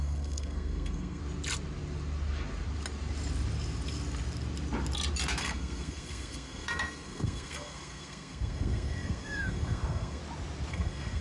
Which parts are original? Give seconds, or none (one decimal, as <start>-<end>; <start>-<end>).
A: 1.2-5.4; 10.2-10.7